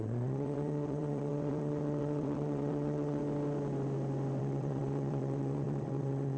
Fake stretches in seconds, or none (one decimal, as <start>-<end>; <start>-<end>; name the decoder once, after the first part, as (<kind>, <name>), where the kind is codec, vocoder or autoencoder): 0.0-3.2 (vocoder, WaveNeXt); 4.4-6.4